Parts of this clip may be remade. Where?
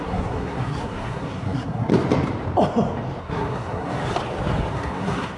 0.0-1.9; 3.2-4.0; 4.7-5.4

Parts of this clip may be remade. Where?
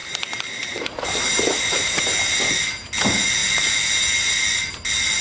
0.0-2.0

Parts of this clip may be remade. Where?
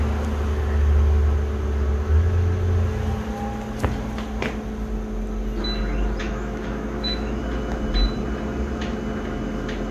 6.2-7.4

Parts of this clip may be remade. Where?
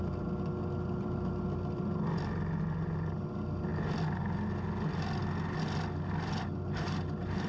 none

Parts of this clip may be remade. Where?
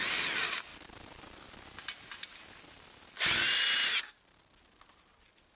none